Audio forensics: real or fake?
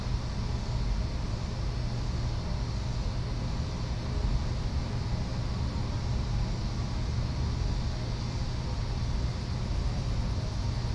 real